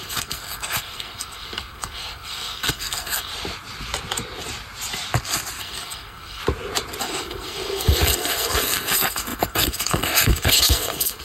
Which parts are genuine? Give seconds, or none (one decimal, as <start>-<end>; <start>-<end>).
3.3-5.6; 6.4-7.0